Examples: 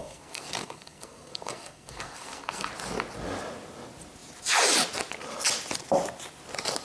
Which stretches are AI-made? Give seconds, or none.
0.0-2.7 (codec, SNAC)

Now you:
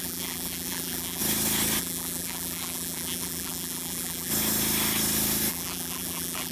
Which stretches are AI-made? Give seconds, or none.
0.0-1.2 (vocoder, BigVGAN v2); 1.8-4.3; 5.5-6.5